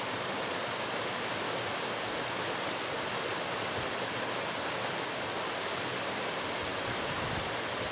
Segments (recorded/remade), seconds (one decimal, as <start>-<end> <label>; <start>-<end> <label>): 0.0-6.7 recorded; 6.7-7.4 remade; 7.4-7.9 recorded

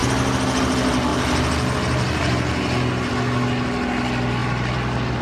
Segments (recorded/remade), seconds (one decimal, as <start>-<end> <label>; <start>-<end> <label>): 0.0-4.4 recorded; 4.4-5.2 remade

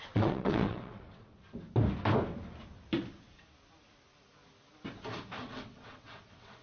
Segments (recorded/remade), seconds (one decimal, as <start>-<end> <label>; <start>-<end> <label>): 0.0-1.4 remade; 1.4-5.4 recorded; 5.4-6.6 remade

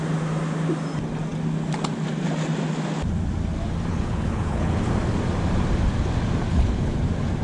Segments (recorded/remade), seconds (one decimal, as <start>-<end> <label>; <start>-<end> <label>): 0.0-3.9 recorded; 3.9-4.9 remade; 4.9-6.5 recorded; 6.5-7.0 remade; 7.0-7.4 recorded

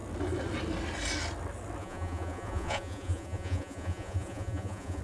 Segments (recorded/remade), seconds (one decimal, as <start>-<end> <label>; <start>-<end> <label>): 0.0-1.8 recorded; 1.8-5.0 remade

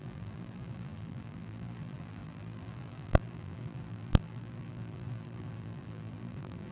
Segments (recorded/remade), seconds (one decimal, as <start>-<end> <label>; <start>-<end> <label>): 0.0-6.7 remade